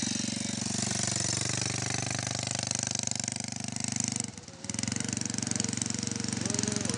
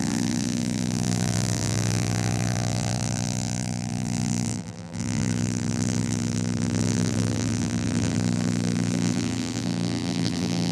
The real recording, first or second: first